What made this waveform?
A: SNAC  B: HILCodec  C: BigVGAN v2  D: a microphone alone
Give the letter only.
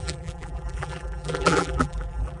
C